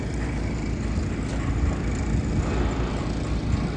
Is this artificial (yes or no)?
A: no